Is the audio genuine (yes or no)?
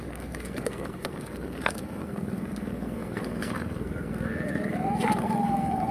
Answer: no